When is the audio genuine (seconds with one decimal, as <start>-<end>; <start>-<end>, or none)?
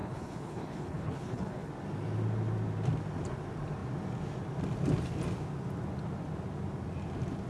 1.7-7.5